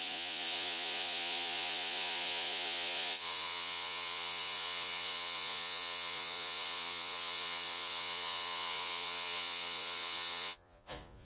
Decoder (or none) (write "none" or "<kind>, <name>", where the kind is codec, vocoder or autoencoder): vocoder, Vocos